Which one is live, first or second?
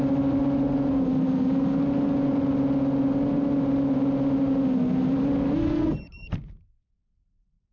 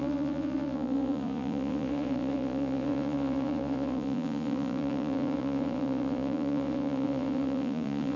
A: first